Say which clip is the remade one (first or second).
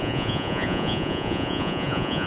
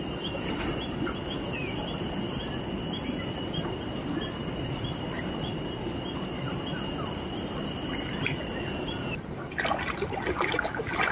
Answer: first